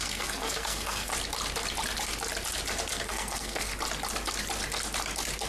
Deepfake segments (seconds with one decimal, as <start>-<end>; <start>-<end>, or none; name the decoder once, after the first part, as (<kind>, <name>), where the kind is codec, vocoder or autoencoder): 0.0-1.1 (codec, SNAC); 2.9-3.7